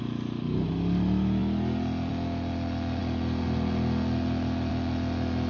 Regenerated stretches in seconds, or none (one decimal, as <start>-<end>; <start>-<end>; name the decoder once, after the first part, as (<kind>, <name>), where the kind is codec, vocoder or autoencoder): none